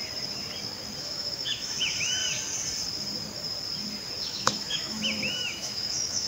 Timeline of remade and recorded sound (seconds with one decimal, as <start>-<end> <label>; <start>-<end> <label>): 0.0-1.0 recorded; 1.0-2.2 remade; 2.2-4.2 recorded; 4.2-6.3 remade

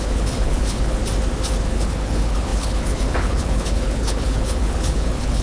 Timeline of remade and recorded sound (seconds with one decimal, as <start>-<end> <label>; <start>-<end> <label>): 0.0-1.0 remade; 1.0-1.7 recorded; 1.7-5.4 remade

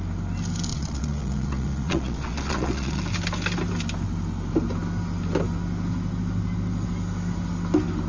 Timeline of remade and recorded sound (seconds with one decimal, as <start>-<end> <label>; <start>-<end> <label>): 0.0-0.7 recorded; 0.7-3.0 remade; 3.0-8.1 recorded

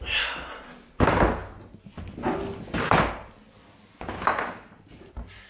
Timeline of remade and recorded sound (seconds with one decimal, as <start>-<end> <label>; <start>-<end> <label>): 0.0-5.5 recorded

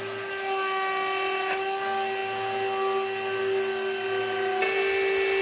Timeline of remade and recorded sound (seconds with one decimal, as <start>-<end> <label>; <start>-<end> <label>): 0.0-5.4 recorded

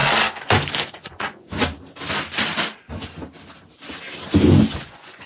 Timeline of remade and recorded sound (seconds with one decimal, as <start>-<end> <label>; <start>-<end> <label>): 0.0-0.9 recorded; 0.9-1.6 remade; 1.6-4.8 recorded; 4.8-5.3 remade